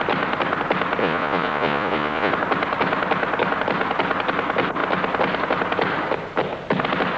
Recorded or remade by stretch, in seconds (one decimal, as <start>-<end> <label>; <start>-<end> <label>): 0.0-1.0 recorded; 1.0-2.3 remade; 2.3-7.2 recorded